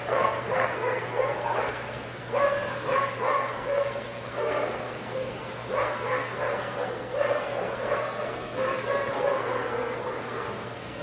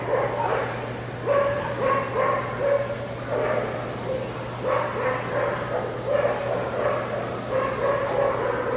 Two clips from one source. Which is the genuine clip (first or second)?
second